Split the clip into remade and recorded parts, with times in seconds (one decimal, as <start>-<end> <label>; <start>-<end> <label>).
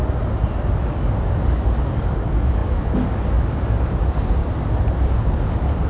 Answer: 0.0-0.8 recorded; 0.8-4.4 remade; 4.4-5.1 recorded; 5.1-5.9 remade